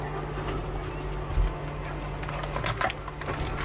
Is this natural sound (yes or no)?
yes